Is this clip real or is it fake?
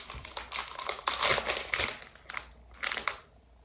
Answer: real